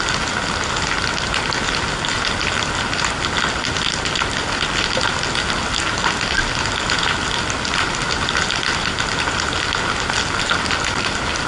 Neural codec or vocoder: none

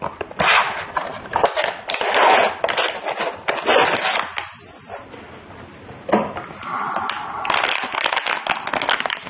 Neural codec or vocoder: none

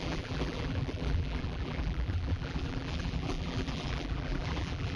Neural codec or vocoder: vocoder, BigVGAN v2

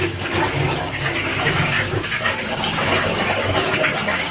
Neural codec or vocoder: codec, DAC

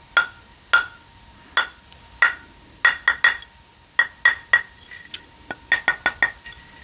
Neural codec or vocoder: none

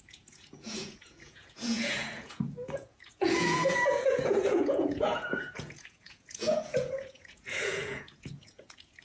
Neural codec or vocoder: vocoder, Vocos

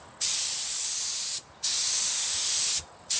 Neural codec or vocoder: none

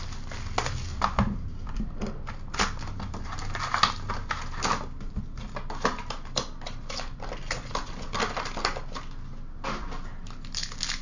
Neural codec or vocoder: none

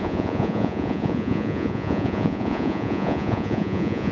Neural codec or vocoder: vocoder, Vocos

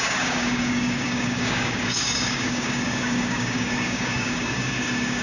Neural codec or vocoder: codec, DAC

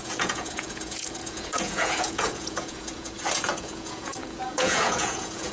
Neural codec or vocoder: vocoder, Vocos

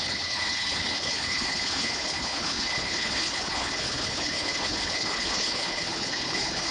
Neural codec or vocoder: codec, HILCodec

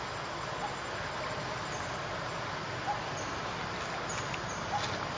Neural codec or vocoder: none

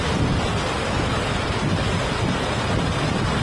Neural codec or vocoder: none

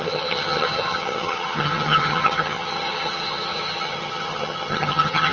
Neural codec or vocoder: vocoder, HiFi-GAN